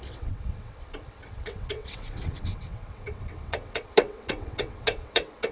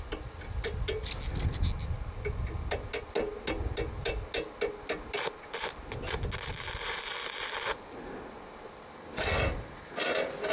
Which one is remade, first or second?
first